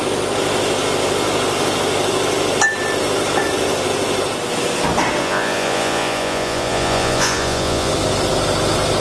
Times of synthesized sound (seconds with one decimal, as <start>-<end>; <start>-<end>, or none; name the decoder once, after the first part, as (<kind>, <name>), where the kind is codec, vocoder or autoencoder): 5.2-7.9 (vocoder, Vocos)